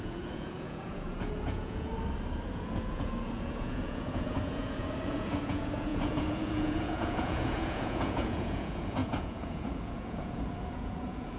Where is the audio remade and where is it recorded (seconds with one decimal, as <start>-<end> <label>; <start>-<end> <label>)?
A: 0.0-1.9 remade; 1.9-2.5 recorded; 2.5-11.4 remade